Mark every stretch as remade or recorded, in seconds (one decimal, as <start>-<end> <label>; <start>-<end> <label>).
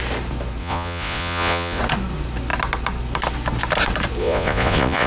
0.0-0.6 recorded; 0.6-1.8 remade; 1.8-4.2 recorded; 4.2-5.1 remade